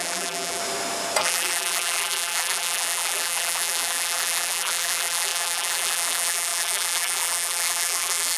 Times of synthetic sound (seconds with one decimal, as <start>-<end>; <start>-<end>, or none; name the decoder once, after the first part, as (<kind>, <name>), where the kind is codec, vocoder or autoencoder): 0.0-0.6 (vocoder, BigVGAN v2); 1.2-8.4